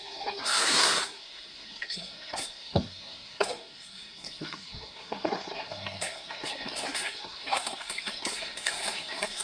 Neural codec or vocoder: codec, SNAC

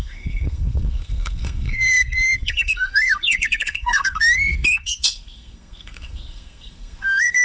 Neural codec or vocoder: codec, SNAC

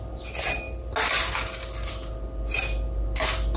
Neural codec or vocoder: none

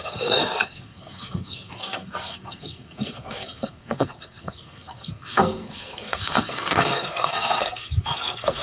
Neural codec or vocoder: codec, SNAC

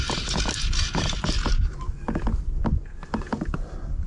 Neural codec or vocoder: none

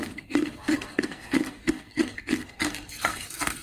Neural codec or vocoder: codec, SNAC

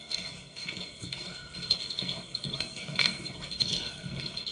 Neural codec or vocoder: codec, SNAC